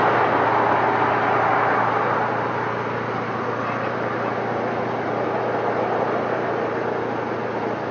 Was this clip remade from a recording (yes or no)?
no